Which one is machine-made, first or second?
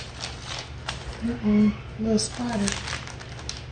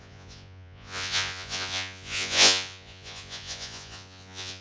second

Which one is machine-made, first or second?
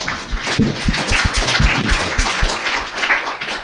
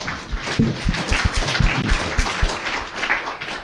first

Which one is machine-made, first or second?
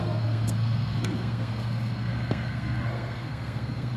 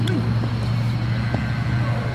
first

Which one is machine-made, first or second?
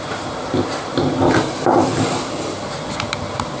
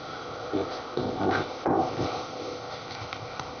second